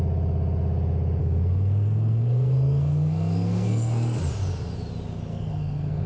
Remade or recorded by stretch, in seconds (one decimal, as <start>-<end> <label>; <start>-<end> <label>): 0.0-1.2 recorded; 1.2-4.2 remade; 4.2-5.3 recorded; 5.3-6.1 remade